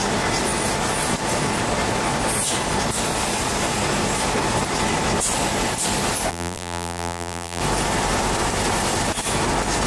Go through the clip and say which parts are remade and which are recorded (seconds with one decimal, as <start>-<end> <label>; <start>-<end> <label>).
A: 0.0-6.3 recorded; 6.3-7.6 remade; 7.6-9.9 recorded